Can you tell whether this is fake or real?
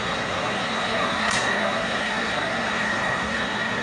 fake